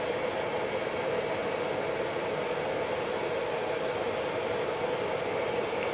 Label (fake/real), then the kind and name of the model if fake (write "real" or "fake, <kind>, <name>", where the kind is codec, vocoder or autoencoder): real